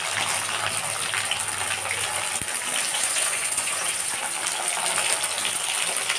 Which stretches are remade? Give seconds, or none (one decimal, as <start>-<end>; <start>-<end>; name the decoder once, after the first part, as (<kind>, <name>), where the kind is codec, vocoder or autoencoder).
2.9-4.2 (vocoder, Vocos)